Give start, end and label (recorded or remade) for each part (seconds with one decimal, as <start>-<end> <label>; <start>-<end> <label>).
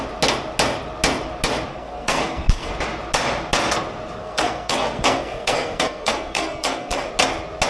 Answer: 0.0-1.7 recorded; 1.7-2.7 remade; 2.7-4.2 recorded; 4.2-7.1 remade; 7.1-7.7 recorded